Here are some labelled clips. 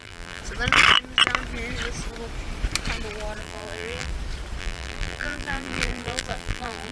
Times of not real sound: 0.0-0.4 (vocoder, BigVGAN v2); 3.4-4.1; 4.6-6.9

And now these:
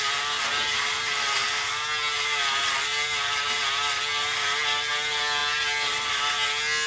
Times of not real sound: none

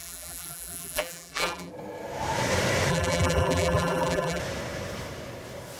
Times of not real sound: 0.0-1.7 (vocoder, BigVGAN v2); 2.9-4.4